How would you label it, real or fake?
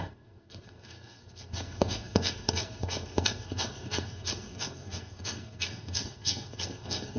fake